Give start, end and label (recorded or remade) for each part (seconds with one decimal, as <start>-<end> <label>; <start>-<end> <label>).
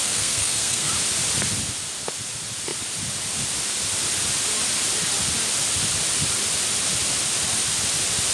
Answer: 0.0-0.9 remade; 0.9-8.3 recorded